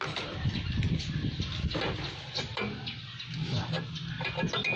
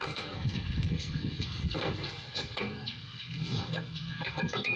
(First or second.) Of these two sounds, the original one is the first